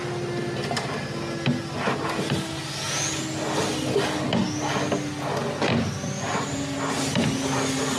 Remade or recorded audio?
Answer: recorded